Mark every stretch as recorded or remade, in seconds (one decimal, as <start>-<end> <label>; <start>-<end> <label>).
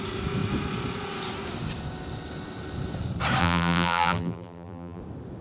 0.0-3.4 recorded; 3.4-5.0 remade; 5.0-5.4 recorded